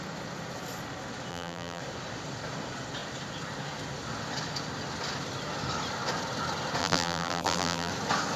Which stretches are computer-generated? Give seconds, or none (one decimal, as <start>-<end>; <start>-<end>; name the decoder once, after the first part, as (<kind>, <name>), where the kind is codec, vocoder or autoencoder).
1.3-1.8 (vocoder, BigVGAN v2); 6.8-7.9

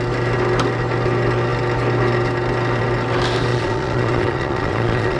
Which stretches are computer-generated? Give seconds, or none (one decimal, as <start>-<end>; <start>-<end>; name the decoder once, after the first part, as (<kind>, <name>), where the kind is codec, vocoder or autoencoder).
3.5-5.2 (vocoder, Vocos)

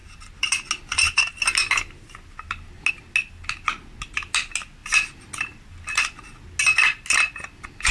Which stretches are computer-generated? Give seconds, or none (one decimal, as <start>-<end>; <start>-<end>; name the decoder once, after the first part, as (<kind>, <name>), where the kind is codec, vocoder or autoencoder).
none

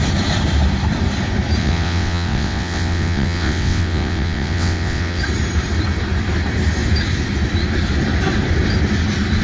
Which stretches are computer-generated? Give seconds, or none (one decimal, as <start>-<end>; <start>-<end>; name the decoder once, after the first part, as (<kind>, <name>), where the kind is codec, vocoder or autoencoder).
1.6-5.2 (vocoder, WaveNeXt)

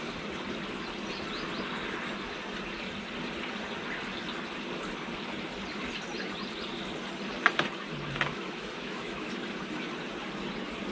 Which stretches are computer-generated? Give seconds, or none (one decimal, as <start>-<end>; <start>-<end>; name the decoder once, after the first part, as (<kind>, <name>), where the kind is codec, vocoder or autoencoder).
8.3-9.3 (autoencoder, DAC-VAE)

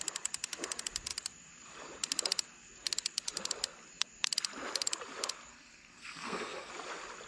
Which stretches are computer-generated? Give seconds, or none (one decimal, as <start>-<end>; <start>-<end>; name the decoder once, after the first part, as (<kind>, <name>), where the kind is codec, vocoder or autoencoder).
5.5-6.7 (codec, SNAC)

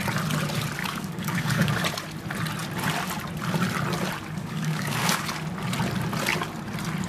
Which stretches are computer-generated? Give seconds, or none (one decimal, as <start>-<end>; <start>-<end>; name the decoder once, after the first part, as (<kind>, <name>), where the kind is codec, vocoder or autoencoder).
0.8-1.7 (codec, DAC); 4.4-5.3

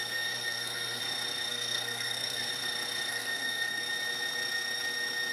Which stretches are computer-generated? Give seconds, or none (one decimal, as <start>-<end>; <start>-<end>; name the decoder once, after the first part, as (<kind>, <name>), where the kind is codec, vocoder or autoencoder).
0.0-1.0 (codec, SNAC); 1.5-2.5; 3.1-3.8